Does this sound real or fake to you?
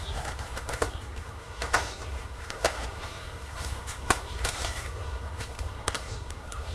fake